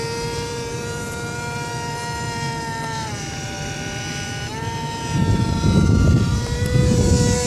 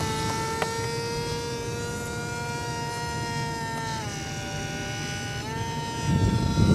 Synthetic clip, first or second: first